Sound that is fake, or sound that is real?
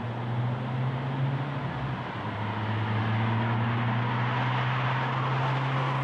real